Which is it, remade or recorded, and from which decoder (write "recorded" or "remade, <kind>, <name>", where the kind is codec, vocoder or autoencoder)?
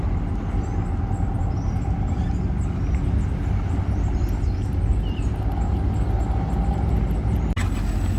recorded